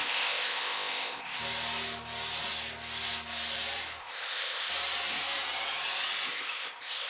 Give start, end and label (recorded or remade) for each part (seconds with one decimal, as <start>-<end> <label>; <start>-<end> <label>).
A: 0.0-1.4 remade; 1.4-4.0 recorded; 4.0-4.7 remade; 4.7-6.3 recorded; 6.3-7.1 remade